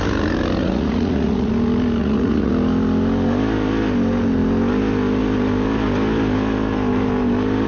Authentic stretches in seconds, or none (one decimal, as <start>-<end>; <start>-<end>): 0.0-0.6; 1.5-2.0; 2.5-7.7